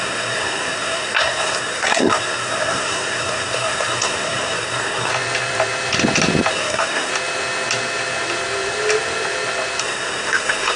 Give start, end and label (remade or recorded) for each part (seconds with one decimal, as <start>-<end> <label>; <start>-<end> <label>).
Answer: 0.0-5.1 remade; 5.1-6.5 recorded; 6.5-7.1 remade; 7.1-9.8 recorded; 9.8-10.8 remade